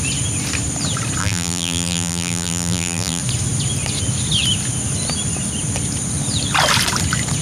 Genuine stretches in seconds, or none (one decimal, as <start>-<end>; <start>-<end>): 0.0-1.2; 3.2-7.4